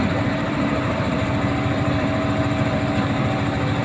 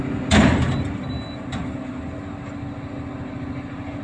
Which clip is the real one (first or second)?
second